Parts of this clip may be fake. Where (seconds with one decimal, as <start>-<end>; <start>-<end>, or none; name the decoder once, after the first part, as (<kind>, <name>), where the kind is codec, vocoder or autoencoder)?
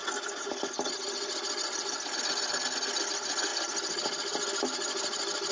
none